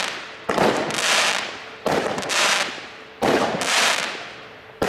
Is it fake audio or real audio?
real